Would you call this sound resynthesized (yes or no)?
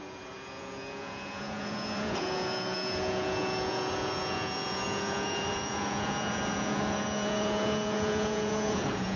yes